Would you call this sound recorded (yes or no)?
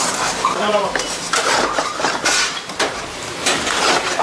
no